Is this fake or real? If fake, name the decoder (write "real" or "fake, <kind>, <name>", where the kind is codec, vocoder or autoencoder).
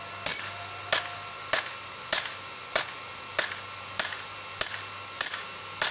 real